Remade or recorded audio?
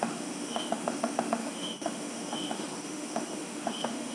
remade